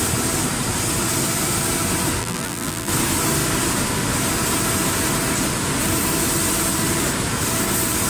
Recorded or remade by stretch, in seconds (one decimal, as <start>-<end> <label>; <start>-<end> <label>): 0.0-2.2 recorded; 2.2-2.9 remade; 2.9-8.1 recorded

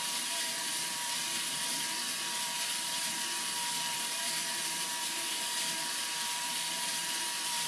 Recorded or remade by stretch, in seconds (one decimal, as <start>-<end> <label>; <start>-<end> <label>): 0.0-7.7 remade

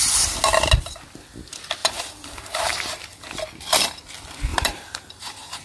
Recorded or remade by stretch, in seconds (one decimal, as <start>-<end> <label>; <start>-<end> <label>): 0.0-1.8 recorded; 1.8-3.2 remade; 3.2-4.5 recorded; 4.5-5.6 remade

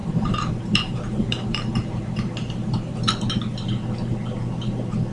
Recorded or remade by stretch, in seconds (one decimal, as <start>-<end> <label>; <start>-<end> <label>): 0.0-3.1 remade; 3.1-5.1 recorded

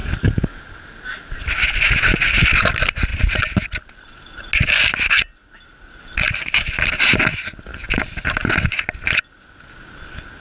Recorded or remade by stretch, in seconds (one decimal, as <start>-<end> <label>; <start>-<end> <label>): 0.0-0.6 remade; 0.6-10.4 recorded